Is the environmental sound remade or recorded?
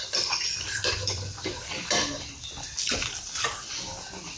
remade